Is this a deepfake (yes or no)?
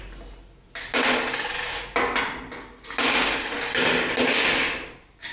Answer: no